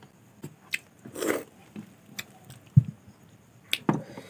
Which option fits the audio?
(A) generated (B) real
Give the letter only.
B